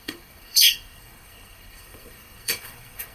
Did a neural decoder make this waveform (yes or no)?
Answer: yes